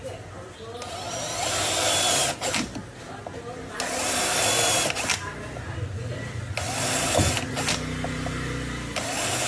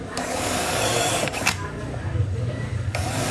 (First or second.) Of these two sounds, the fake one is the second